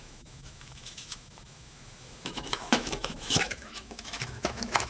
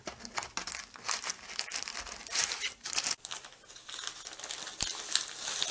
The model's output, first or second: first